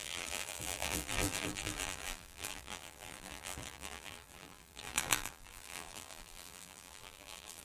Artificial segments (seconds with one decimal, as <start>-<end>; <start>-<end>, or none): 0.0-7.6